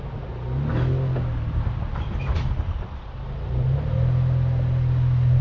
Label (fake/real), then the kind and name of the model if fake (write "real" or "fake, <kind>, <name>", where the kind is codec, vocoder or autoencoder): real